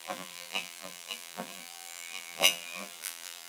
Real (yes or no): no